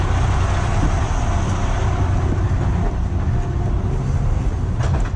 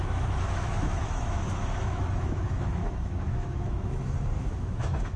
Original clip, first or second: first